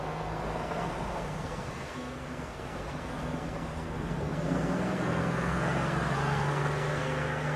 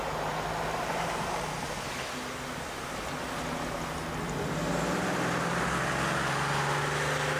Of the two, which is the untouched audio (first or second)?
second